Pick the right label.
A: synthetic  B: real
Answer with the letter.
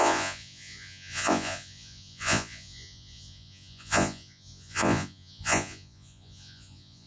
A